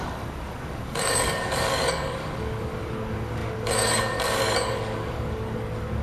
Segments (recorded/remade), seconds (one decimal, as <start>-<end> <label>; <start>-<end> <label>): 0.0-6.0 remade